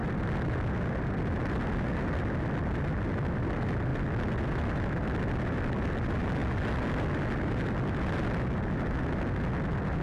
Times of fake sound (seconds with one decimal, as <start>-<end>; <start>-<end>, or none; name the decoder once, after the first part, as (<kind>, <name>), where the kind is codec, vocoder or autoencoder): none